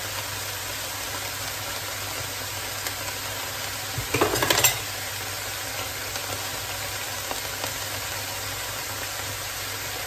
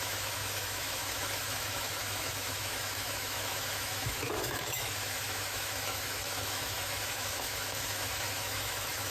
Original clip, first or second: first